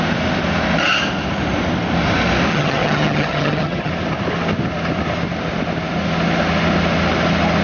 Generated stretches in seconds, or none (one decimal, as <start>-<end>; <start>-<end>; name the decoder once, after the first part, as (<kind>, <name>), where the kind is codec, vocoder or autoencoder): 2.5-3.9 (vocoder, HiFi-GAN)